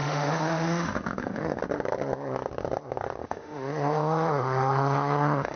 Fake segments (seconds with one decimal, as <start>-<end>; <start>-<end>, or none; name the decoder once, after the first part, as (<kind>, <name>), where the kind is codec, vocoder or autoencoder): 0.0-1.6 (autoencoder, DAC-VAE); 3.2-5.6